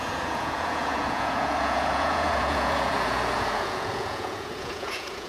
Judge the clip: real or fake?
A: fake